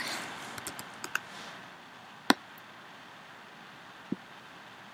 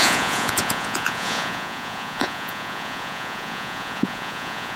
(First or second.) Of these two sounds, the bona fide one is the first